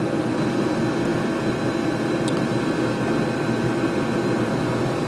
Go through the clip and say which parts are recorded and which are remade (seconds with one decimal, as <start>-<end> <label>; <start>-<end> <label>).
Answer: 0.0-5.1 recorded